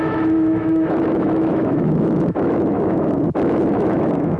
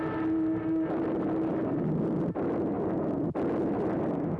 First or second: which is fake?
first